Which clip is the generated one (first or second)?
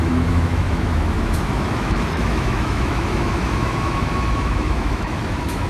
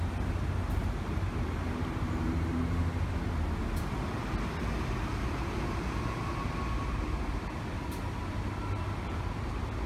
first